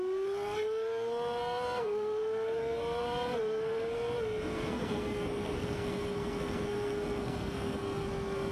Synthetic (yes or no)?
yes